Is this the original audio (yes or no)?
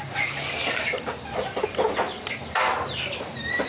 no